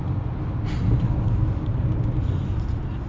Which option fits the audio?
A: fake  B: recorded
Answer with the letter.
B